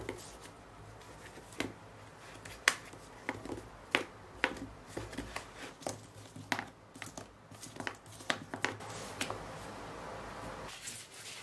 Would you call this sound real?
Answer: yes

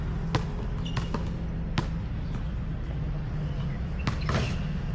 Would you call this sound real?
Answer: yes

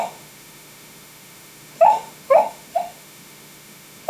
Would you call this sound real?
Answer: no